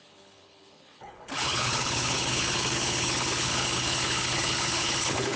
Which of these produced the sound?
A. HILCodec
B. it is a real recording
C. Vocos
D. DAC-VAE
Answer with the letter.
A